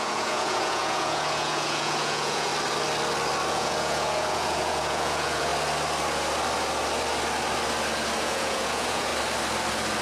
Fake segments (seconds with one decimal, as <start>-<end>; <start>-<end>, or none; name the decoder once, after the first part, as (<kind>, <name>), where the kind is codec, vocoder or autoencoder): 0.0-2.5 (vocoder, Vocos); 3.5-5.5; 8.2-9.1